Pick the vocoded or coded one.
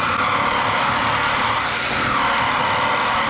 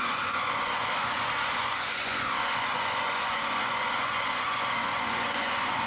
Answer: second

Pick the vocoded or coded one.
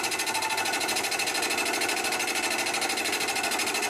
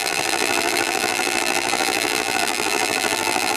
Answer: second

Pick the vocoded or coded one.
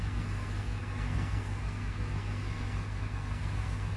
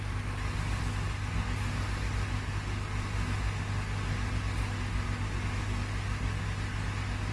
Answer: first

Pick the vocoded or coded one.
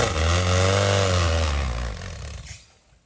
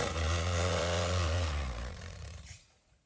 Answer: second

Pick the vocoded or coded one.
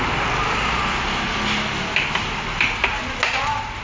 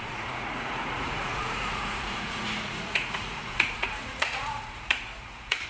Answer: second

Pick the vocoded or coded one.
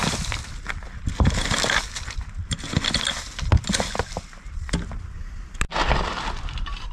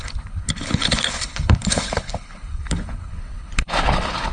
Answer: second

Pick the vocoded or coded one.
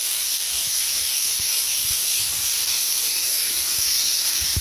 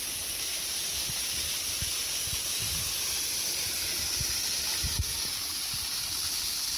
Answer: first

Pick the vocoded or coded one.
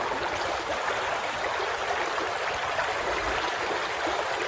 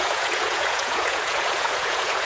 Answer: second